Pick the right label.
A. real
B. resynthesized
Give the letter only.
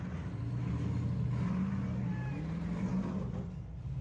A